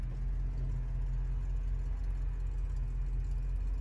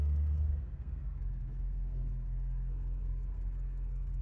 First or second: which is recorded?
first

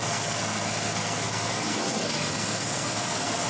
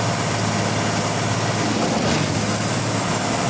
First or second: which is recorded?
second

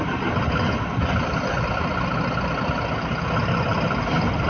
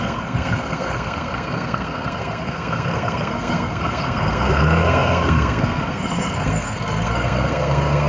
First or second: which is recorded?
first